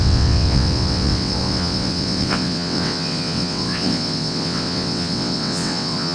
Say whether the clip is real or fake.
fake